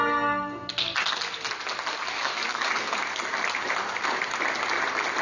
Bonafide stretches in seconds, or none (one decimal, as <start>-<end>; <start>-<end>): 0.0-1.9; 3.0-5.2